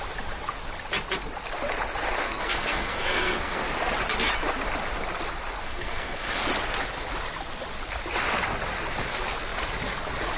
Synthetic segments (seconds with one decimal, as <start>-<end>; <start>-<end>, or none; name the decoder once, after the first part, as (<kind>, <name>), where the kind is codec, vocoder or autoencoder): 2.2-3.6 (codec, SNAC); 5.6-6.4